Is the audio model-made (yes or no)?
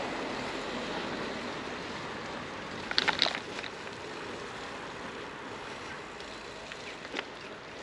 no